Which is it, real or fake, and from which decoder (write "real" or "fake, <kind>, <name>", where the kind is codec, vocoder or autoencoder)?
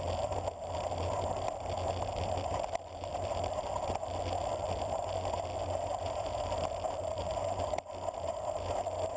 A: real